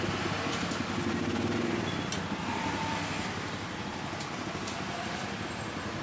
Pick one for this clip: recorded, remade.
recorded